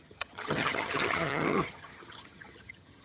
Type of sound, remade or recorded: remade